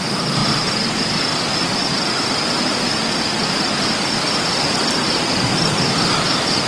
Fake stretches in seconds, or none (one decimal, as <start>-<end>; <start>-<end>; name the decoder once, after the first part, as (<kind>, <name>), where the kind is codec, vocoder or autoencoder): none